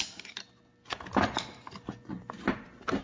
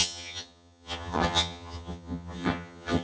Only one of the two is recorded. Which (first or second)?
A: first